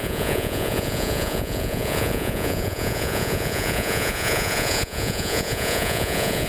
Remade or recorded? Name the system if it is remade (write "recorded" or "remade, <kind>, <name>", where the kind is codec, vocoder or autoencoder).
remade, vocoder, Vocos